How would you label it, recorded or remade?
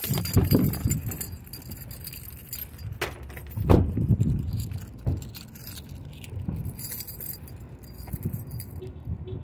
recorded